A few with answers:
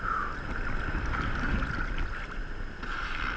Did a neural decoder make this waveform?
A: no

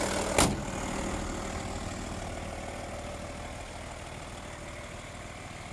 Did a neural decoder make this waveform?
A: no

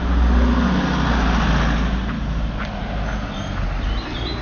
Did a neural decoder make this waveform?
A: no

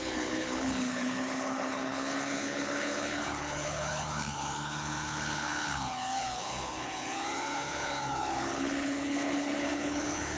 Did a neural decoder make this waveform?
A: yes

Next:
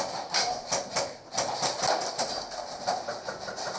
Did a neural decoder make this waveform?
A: no